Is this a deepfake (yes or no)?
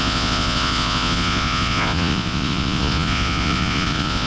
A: yes